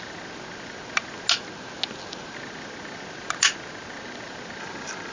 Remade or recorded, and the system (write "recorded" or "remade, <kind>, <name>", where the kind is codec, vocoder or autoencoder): recorded